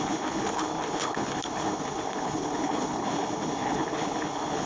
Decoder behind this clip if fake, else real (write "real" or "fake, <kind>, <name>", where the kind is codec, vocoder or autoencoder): fake, codec, HILCodec